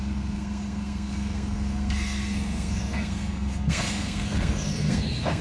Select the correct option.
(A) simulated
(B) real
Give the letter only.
A